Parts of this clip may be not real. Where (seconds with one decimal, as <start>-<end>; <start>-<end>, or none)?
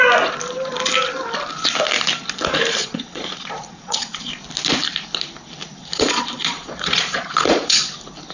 2.8-4.4; 5.8-7.8